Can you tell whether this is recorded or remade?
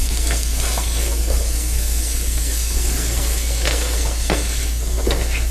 remade